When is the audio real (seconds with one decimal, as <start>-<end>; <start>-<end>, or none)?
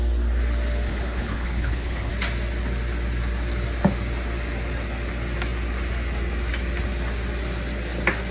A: 0.0-0.9; 2.1-8.3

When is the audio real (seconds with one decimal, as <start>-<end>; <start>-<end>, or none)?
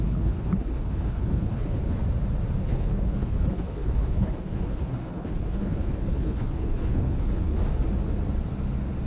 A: 2.0-2.6; 7.6-9.1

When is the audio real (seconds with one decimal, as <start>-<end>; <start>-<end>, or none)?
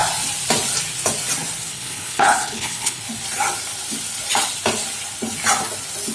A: 0.0-1.7; 3.0-6.1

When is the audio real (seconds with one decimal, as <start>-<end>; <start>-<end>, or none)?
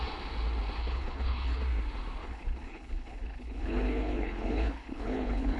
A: 0.0-0.8; 1.6-2.2